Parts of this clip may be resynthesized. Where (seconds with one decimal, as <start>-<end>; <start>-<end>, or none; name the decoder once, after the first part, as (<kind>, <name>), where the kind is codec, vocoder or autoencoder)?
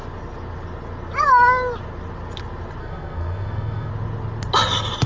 2.8-3.9 (codec, SNAC)